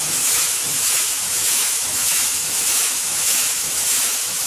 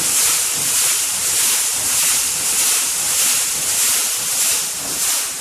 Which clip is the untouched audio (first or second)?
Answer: second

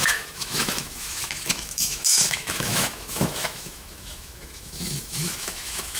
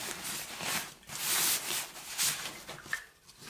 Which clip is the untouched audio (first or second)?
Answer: second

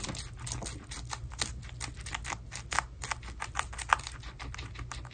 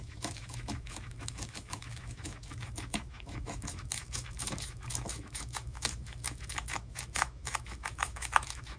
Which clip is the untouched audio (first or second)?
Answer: first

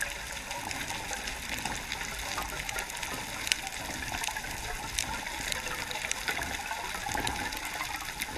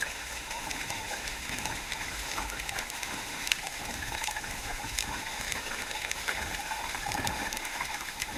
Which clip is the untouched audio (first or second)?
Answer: first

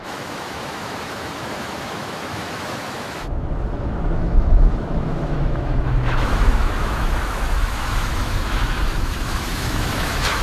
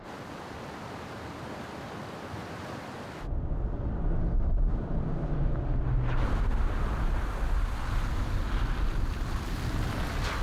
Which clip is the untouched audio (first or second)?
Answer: second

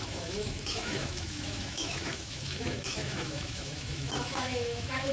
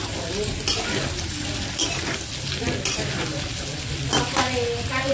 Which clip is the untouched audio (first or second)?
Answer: second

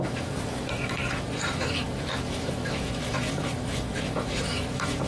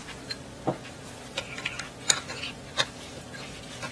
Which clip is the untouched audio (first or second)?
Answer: second